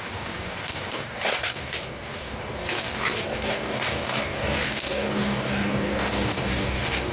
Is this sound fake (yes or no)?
yes